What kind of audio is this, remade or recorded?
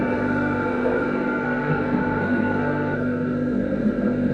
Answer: remade